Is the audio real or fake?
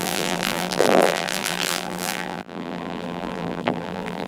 fake